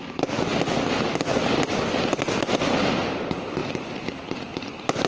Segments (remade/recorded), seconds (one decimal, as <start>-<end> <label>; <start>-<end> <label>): 0.0-5.1 recorded